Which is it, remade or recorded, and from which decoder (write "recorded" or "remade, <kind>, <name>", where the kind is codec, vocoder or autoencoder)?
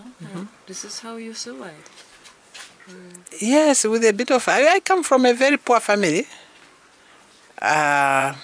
remade, vocoder, Vocos